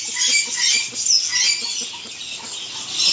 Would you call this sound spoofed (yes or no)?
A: no